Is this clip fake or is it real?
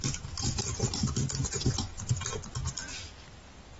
real